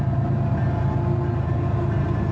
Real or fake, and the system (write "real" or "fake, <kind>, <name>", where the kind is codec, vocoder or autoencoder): real